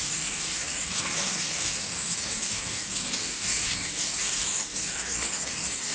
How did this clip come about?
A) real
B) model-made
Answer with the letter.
B